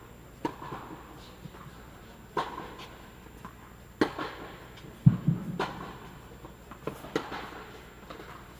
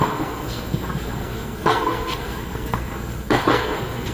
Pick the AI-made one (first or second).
second